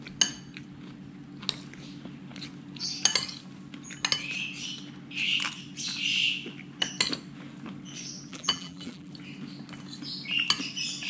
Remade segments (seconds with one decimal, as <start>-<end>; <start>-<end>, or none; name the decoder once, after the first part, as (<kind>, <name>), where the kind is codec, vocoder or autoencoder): 8.3-9.1 (vocoder, BigVGAN v2)